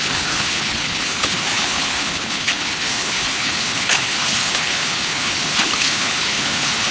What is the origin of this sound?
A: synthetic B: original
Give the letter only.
A